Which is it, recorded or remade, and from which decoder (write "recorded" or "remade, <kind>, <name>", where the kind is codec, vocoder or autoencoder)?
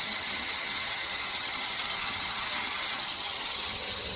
remade, vocoder, HiFi-GAN